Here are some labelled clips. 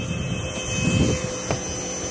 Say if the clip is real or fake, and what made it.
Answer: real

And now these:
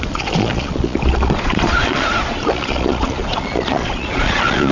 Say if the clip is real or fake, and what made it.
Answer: fake, vocoder, Vocos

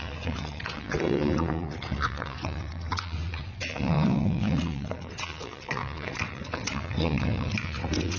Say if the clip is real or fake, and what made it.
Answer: fake, vocoder, WaveNeXt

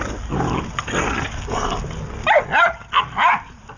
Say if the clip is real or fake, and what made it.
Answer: real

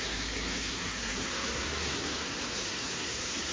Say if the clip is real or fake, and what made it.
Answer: fake, codec, SNAC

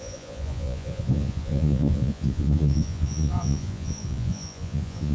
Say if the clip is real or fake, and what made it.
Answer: fake, vocoder, Vocos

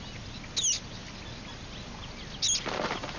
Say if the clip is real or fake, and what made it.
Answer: real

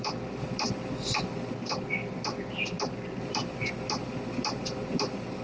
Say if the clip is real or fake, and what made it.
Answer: real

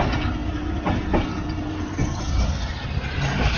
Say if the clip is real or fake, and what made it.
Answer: real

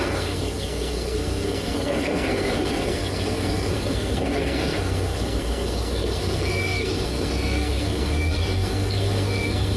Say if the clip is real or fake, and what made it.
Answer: fake, codec, SNAC